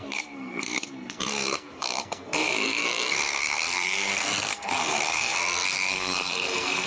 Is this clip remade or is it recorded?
remade